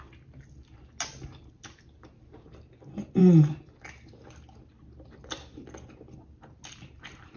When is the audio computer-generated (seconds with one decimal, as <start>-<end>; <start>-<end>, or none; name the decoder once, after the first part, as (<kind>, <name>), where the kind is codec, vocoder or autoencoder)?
none